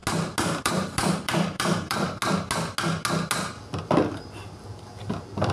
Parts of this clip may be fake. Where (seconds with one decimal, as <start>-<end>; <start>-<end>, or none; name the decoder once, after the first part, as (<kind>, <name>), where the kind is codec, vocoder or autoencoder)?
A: 0.6-2.2 (vocoder, BigVGAN v2); 3.8-5.5